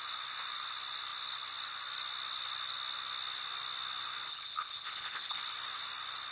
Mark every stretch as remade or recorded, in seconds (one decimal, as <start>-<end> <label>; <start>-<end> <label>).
0.0-4.3 recorded; 4.3-5.4 remade; 5.4-6.3 recorded